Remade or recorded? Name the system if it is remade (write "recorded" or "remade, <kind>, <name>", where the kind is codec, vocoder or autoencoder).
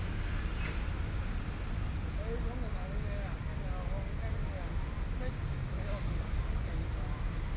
recorded